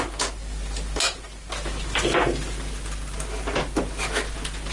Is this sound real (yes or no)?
yes